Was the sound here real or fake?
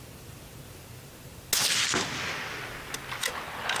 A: real